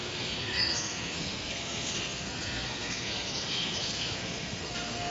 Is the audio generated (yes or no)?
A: yes